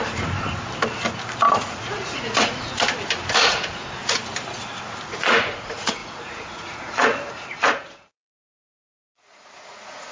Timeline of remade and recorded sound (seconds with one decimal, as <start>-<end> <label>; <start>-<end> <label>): 0.0-1.7 recorded; 1.7-2.7 remade; 2.7-3.4 recorded; 3.4-4.0 remade; 4.0-5.1 recorded; 5.1-10.1 remade

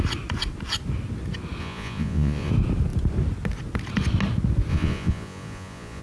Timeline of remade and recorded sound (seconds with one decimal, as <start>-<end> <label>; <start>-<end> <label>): 0.0-1.6 recorded; 1.6-2.5 remade; 2.5-4.7 recorded; 4.7-6.0 remade

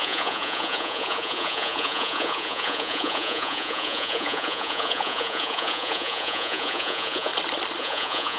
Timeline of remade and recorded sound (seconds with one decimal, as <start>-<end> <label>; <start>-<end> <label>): 0.0-7.3 remade; 7.3-7.8 recorded; 7.8-8.4 remade

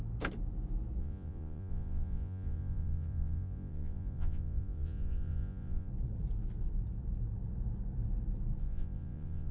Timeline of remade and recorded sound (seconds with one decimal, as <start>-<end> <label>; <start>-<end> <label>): 0.0-1.0 recorded; 1.0-5.9 remade; 5.9-8.6 recorded; 8.6-9.5 remade